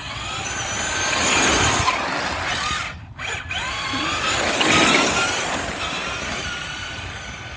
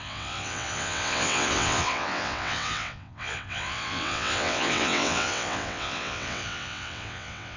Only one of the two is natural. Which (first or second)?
first